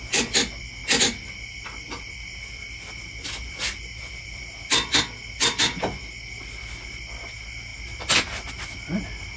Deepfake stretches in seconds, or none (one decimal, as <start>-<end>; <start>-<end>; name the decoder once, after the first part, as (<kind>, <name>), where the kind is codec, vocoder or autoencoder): none